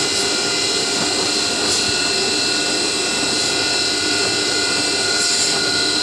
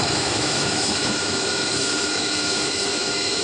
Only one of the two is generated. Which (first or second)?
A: second